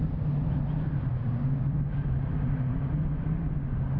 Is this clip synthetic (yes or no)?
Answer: no